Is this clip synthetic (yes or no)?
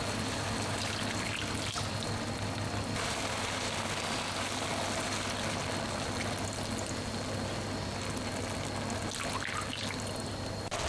no